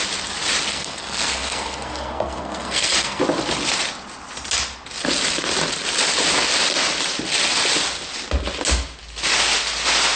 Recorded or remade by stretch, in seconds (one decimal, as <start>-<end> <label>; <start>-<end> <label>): 0.0-0.7 recorded; 0.7-3.2 remade; 3.2-10.2 recorded